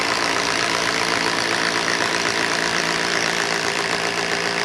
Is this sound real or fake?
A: fake